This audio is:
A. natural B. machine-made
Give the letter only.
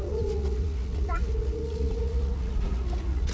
B